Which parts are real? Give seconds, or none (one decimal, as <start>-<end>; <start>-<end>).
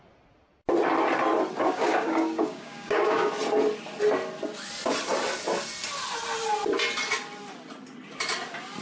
0.0-1.6; 3.3-8.8